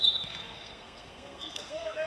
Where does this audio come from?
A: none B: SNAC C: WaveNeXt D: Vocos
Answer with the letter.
B